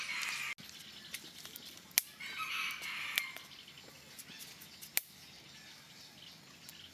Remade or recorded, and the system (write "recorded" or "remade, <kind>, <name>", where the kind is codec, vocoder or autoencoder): recorded